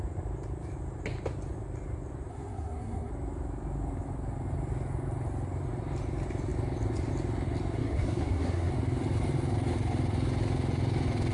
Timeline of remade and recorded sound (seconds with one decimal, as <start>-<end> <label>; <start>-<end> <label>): 0.0-2.3 recorded; 2.3-3.1 remade; 3.1-7.8 recorded; 7.8-8.7 remade; 8.7-11.3 recorded